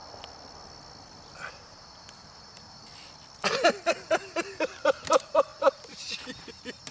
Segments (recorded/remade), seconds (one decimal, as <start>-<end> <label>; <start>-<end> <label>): 0.0-1.5 recorded; 1.5-2.8 remade; 2.8-3.9 recorded; 3.9-6.9 remade

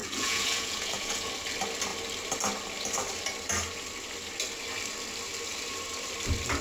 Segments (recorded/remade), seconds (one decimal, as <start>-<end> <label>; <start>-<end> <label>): 0.0-1.3 remade; 1.3-6.6 recorded

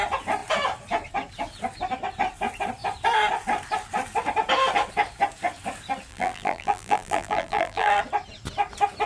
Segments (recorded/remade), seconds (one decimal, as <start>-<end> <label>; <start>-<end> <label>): 0.0-6.1 recorded; 6.1-8.0 remade; 8.0-9.1 recorded

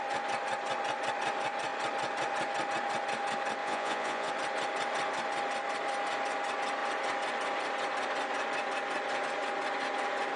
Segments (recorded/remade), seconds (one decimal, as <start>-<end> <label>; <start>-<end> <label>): 0.0-3.6 recorded; 3.6-4.3 remade; 4.3-10.4 recorded